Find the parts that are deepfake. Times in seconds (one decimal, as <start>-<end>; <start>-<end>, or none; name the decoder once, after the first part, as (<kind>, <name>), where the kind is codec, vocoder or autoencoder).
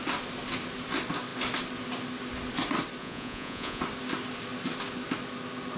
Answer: 3.0-3.8 (vocoder, Vocos)